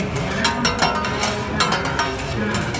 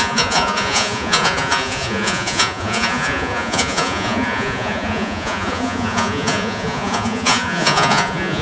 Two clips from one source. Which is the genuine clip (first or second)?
first